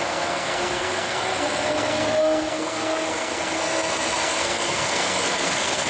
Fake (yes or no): yes